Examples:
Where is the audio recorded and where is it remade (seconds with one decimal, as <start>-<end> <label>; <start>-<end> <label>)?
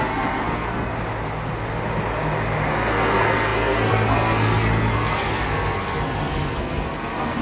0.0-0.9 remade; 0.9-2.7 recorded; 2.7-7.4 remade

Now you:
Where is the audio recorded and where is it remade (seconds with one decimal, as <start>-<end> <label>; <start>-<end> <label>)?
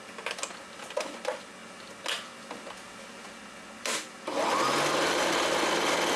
0.0-6.2 recorded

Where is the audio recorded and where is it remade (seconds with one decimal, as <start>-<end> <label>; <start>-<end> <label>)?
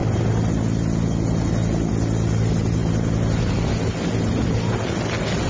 0.0-5.5 recorded